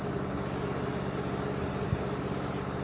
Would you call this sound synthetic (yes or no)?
no